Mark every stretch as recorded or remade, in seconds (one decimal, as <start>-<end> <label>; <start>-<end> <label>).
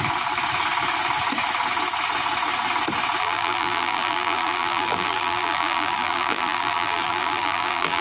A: 0.0-3.2 recorded; 3.2-8.0 remade